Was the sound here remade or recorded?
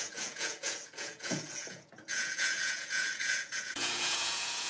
remade